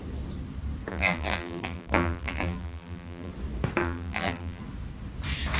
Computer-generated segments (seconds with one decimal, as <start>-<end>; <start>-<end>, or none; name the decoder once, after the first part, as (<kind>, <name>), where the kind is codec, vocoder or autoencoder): 0.9-3.3 (vocoder, BigVGAN v2); 3.8-4.6